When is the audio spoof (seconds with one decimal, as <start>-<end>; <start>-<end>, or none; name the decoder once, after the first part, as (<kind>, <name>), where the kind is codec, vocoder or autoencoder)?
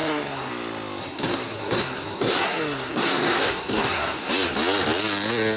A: 0.0-0.5 (codec, SNAC); 1.0-4.3